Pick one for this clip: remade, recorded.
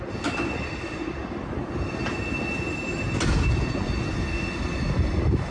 recorded